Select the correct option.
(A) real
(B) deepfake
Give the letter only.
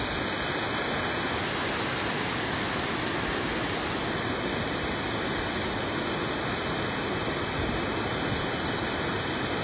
A